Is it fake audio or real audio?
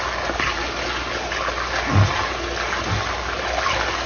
real